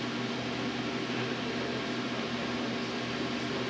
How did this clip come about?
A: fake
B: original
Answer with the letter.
B